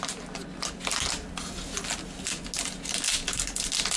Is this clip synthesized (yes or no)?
no